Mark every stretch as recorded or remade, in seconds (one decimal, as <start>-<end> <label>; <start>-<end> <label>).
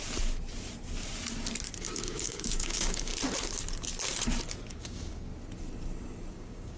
0.0-1.8 recorded; 1.8-3.1 remade; 3.1-4.7 recorded; 4.7-5.3 remade; 5.3-6.3 recorded; 6.3-6.8 remade